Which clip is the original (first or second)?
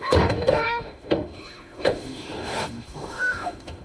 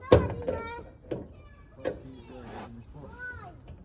second